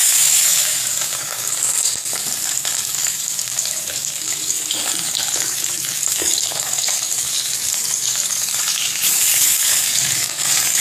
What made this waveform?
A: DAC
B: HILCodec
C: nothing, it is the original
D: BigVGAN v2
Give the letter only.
A